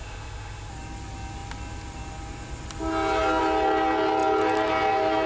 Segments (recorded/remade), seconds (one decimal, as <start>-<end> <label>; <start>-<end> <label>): 0.0-0.7 remade; 0.7-5.3 recorded